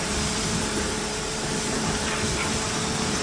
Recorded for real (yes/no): no